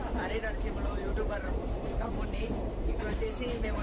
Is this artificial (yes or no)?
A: yes